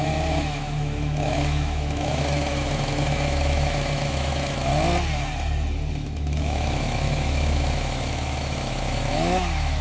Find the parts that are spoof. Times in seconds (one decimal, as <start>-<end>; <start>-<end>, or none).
0.0-4.7; 5.9-9.8